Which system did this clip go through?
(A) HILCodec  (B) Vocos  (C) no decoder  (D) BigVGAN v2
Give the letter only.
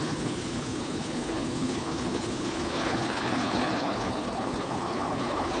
A